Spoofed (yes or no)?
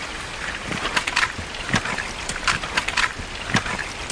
no